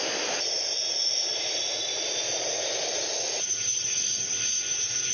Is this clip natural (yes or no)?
yes